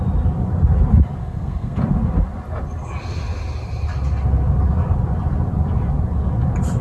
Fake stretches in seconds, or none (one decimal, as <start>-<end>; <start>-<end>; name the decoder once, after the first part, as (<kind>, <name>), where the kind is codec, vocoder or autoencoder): 1.2-1.8 (codec, SNAC)